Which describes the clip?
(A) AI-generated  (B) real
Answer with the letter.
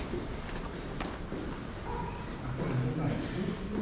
B